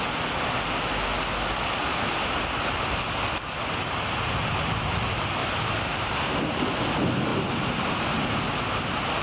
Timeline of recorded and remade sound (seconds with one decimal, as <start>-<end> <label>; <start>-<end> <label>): 0.0-1.9 recorded; 1.9-3.0 remade; 3.0-5.4 recorded; 5.4-6.5 remade; 6.5-7.3 recorded; 7.3-8.5 remade; 8.5-9.2 recorded